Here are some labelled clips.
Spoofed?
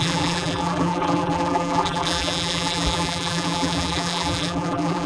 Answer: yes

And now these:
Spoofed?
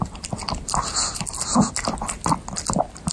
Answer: no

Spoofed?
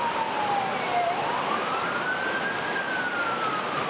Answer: yes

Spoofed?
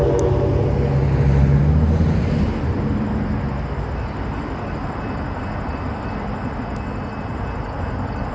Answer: no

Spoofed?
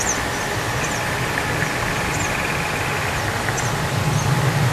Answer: no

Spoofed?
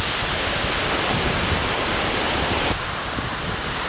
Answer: no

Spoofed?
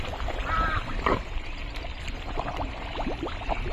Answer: yes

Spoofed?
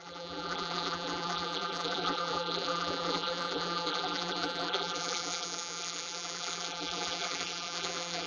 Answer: yes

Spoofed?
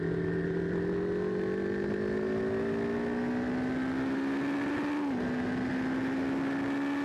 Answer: no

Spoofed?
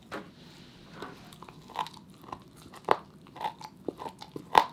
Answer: no